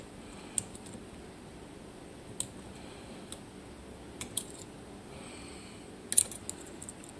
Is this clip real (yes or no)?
yes